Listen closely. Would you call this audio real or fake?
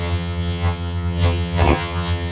fake